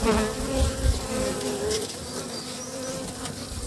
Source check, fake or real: real